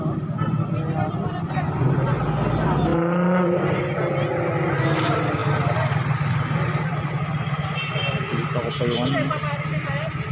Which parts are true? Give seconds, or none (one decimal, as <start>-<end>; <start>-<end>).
0.0-10.3